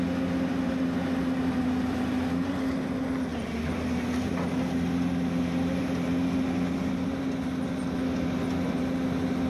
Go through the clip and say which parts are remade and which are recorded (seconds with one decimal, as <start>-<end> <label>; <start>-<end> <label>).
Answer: 0.0-9.5 recorded